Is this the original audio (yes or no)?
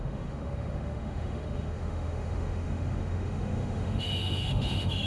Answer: no